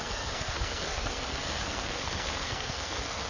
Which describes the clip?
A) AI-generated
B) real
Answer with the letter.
A